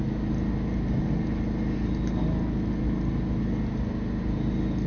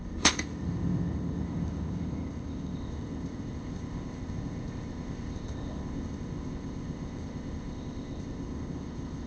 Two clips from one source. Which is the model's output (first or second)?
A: second